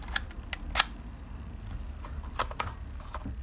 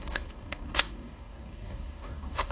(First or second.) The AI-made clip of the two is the second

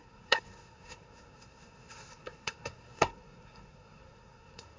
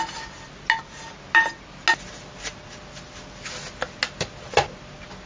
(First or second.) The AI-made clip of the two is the first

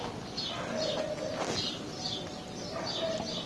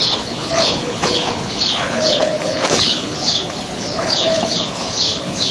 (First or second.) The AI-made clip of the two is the second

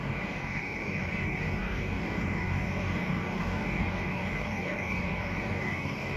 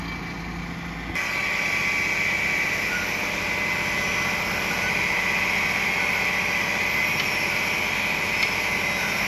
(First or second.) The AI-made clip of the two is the first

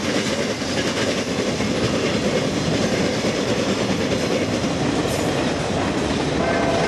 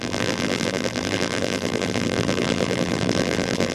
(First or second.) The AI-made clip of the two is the second